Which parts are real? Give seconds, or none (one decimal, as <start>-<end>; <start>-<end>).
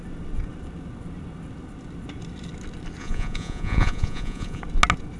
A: 0.0-3.0; 4.6-5.2